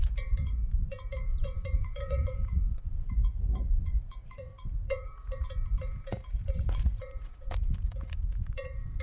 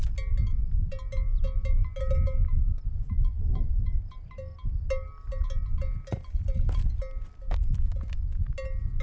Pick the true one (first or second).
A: second